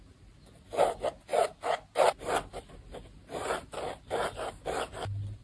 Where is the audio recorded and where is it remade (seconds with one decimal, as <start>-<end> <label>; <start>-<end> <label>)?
0.0-5.4 recorded